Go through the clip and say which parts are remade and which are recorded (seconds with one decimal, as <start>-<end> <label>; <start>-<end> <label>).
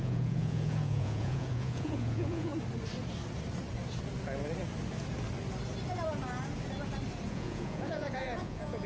0.0-2.5 remade; 2.5-7.3 recorded; 7.3-8.9 remade